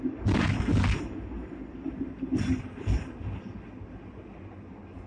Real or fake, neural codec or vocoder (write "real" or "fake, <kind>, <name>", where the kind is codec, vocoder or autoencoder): real